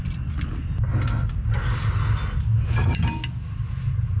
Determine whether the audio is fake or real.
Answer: real